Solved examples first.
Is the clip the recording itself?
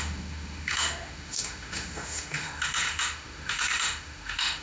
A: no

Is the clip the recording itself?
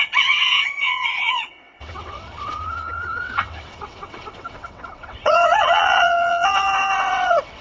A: no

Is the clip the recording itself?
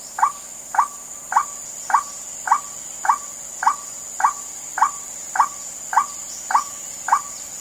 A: yes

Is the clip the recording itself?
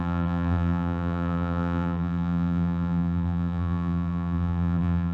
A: no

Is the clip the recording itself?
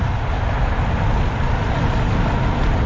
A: yes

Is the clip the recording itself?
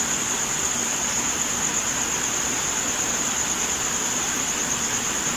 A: yes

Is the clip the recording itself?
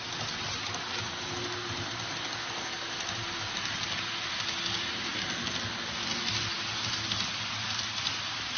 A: yes